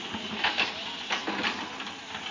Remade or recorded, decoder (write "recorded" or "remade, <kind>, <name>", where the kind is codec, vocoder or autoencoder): recorded